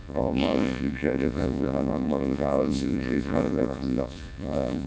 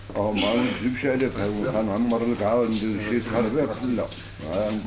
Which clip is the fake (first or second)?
first